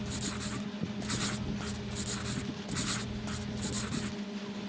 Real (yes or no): yes